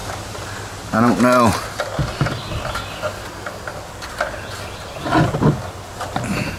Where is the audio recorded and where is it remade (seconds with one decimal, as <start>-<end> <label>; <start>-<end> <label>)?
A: 0.0-1.6 remade; 1.6-6.6 recorded